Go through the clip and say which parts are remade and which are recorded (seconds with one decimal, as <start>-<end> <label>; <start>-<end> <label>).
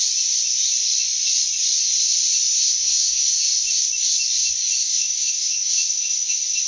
0.0-2.8 recorded; 2.8-3.6 remade; 3.6-4.8 recorded; 4.8-6.7 remade